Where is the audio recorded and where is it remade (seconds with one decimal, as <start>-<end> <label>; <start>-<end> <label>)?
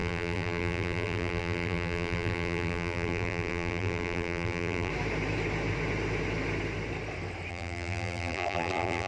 0.0-4.9 remade; 4.9-7.5 recorded; 7.5-9.1 remade